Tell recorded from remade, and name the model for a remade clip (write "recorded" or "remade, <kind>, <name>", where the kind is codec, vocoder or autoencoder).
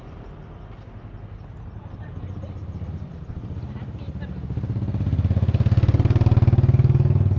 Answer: recorded